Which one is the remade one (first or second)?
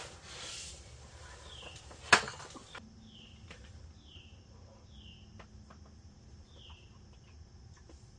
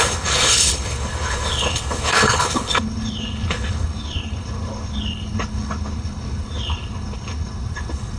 second